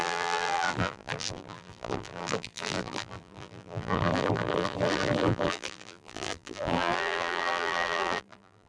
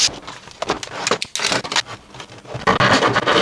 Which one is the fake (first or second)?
first